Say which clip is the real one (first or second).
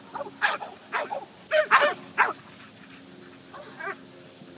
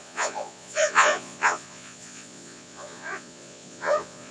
first